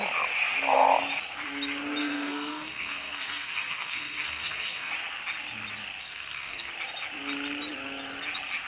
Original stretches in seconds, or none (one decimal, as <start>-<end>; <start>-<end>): 0.0-2.0; 4.9-6.0; 6.7-8.7